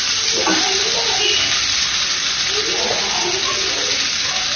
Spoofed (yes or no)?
no